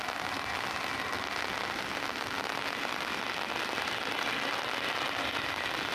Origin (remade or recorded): recorded